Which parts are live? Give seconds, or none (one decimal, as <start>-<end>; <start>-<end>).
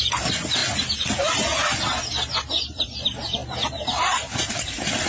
0.6-2.3; 3.4-4.1